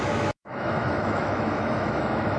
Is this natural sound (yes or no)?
no